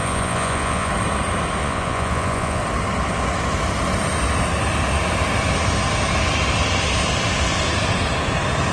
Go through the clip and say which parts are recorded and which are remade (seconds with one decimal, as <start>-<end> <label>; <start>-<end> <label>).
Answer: 0.0-0.9 remade; 0.9-1.6 recorded; 1.6-2.6 remade; 2.6-8.7 recorded